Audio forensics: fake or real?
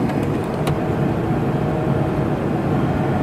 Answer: fake